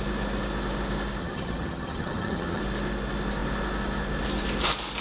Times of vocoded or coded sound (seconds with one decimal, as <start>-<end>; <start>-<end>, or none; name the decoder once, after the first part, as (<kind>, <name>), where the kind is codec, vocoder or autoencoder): 1.2-2.6 (vocoder, HiFi-GAN)